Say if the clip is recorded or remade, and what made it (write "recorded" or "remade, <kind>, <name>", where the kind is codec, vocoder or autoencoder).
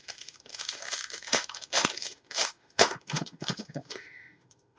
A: remade, autoencoder, DAC-VAE